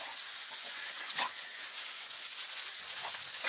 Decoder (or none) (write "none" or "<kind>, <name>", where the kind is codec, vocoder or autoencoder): vocoder, Vocos